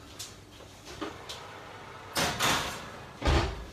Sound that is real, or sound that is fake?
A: fake